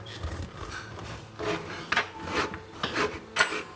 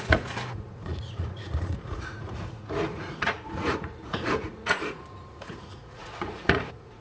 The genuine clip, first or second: first